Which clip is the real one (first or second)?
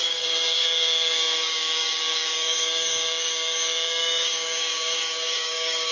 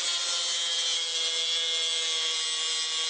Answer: second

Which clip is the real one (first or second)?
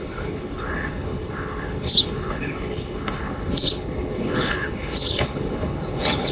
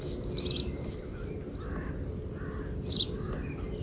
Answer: second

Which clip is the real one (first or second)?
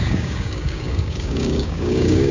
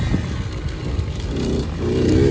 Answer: second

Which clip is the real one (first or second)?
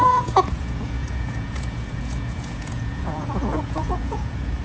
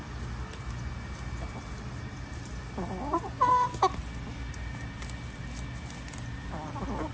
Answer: second